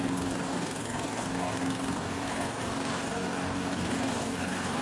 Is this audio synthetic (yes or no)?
yes